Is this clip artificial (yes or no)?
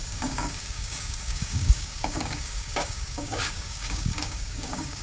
yes